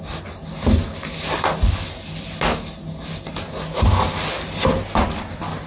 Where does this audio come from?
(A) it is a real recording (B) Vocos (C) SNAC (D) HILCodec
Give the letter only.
A